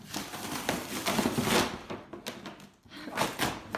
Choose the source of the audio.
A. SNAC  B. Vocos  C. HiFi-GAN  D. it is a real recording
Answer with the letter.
D